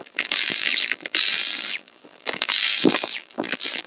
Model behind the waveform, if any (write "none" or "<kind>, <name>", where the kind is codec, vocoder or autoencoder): vocoder, BigVGAN v2